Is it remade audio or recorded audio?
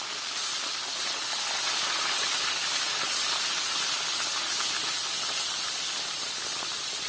recorded